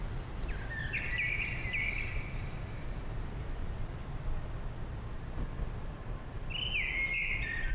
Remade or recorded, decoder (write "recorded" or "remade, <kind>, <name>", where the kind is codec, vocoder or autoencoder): recorded